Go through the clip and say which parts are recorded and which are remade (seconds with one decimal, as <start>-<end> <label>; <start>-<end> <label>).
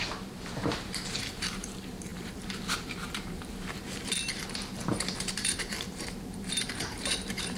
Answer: 0.0-7.6 remade